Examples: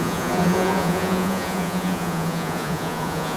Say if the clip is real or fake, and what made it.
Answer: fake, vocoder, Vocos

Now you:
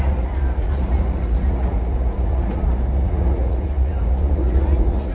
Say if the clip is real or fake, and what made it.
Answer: fake, vocoder, Vocos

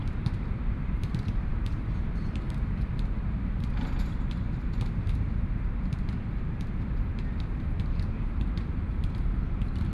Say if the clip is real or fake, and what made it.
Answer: fake, vocoder, BigVGAN v2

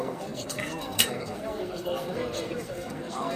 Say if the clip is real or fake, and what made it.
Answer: fake, codec, SNAC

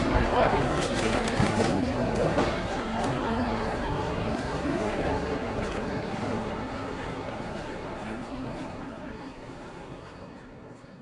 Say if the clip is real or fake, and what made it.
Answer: fake, codec, SNAC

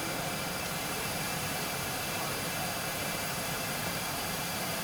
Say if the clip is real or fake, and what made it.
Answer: fake, vocoder, BigVGAN v2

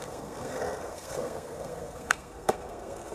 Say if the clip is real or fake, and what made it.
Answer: fake, codec, SNAC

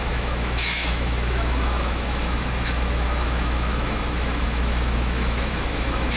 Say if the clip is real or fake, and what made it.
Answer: fake, autoencoder, DAC-VAE